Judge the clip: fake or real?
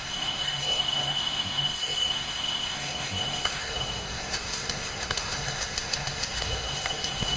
fake